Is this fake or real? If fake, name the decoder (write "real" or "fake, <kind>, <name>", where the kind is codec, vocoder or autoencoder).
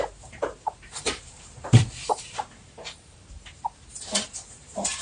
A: fake, vocoder, BigVGAN v2